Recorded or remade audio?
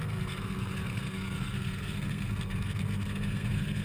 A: remade